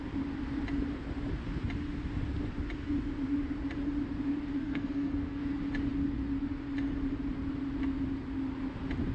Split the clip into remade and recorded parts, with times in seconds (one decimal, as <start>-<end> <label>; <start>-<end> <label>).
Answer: 0.0-4.6 recorded; 4.6-5.4 remade; 5.4-9.1 recorded